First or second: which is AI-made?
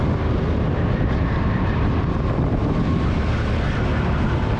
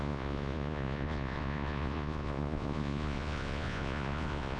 second